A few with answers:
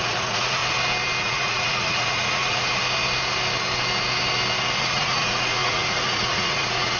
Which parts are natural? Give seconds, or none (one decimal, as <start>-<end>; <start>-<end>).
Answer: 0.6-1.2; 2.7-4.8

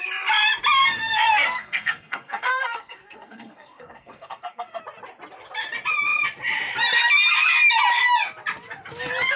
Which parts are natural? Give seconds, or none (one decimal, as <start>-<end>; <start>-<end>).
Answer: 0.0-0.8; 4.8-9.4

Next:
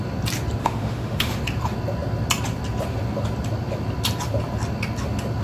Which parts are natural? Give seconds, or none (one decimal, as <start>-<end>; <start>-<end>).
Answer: 0.0-0.6; 1.4-5.4

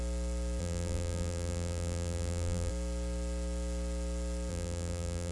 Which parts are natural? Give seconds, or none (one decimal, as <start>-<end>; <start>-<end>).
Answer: 0.0-0.6; 2.7-4.5

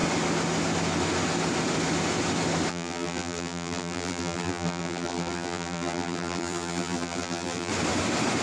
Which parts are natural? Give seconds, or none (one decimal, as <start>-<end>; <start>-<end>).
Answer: 0.0-2.7; 7.7-8.4

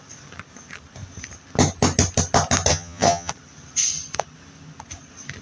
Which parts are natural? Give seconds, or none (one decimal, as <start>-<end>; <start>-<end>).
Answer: 0.0-2.7; 3.3-5.4